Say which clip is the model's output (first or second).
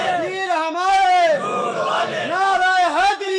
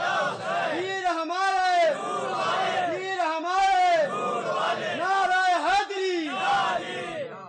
first